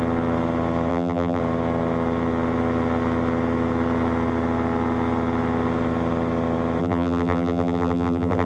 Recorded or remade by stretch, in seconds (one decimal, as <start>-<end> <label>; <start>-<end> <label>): 0.0-0.9 recorded; 0.9-1.4 remade; 1.4-6.8 recorded; 6.8-8.5 remade